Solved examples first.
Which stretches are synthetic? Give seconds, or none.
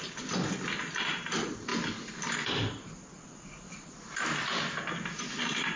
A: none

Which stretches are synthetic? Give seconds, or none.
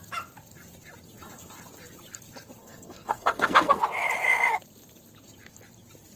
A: 2.6-3.8 (codec, SNAC)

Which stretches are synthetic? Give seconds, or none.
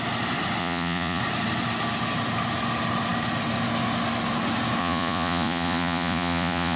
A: 0.6-1.2 (vocoder, Vocos); 4.8-6.8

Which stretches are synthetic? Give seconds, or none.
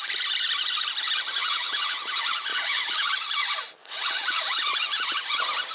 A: 1.4-2.0 (vocoder, WaveNeXt); 2.5-3.1; 3.8-4.4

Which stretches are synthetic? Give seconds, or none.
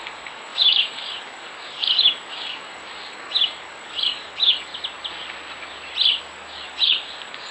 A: 0.0-4.7 (codec, DAC); 6.2-7.5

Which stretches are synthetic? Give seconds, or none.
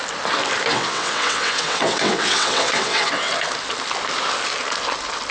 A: 0.7-3.3 (vocoder, WaveNeXt)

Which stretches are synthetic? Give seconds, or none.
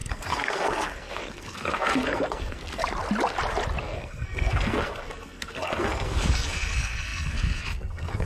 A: 0.0-2.8 (codec, SNAC); 3.8-8.3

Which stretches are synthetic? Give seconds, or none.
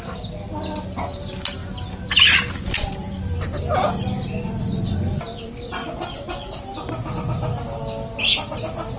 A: 3.0-4.9 (vocoder, BigVGAN v2); 5.8-6.6